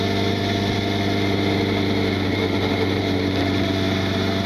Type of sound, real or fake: real